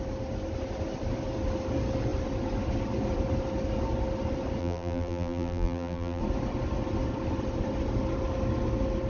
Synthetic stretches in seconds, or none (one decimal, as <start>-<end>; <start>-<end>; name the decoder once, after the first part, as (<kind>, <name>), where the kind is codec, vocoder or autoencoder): 4.6-6.2 (vocoder, BigVGAN v2)